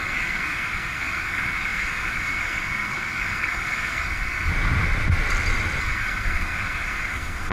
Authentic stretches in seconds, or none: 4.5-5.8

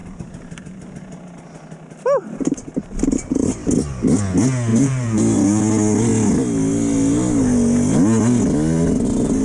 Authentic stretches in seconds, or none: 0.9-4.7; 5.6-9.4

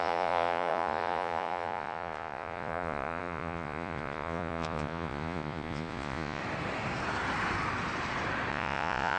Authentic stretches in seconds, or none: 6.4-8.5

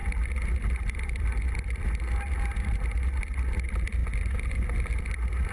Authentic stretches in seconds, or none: 0.0-5.5

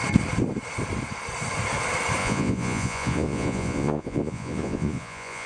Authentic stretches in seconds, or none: 0.0-2.2